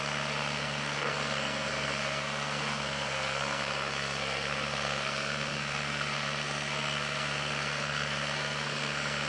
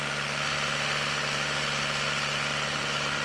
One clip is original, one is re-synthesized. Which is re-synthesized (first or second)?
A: first